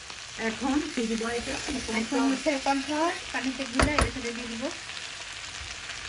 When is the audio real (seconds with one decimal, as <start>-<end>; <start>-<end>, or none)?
0.0-0.9; 3.2-6.1